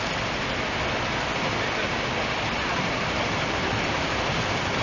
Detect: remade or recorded recorded